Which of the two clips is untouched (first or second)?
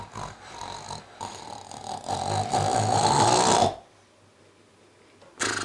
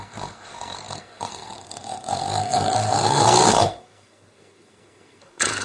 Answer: first